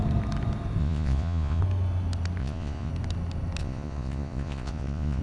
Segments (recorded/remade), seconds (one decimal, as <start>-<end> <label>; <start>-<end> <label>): 0.0-0.8 recorded; 0.8-1.6 remade; 1.6-2.4 recorded; 2.4-2.9 remade; 2.9-3.6 recorded; 3.6-5.2 remade